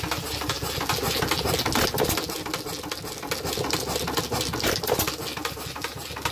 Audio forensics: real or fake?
real